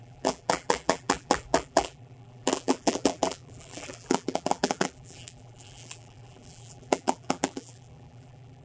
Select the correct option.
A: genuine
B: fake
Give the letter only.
B